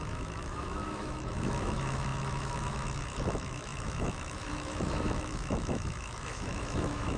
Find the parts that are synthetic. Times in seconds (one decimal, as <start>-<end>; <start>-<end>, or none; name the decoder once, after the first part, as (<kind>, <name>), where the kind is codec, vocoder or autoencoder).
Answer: 0.0-7.2 (autoencoder, DAC-VAE)